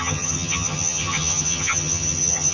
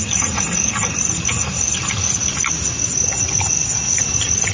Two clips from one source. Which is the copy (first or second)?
first